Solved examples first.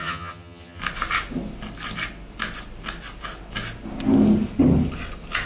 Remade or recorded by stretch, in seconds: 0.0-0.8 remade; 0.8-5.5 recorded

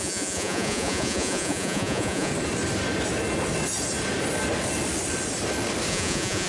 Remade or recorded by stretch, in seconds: 0.0-2.3 remade; 2.3-5.9 recorded; 5.9-6.5 remade